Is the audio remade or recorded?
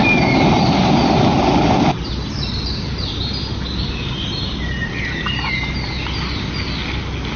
recorded